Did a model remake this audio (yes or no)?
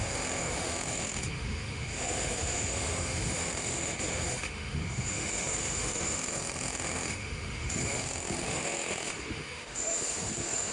yes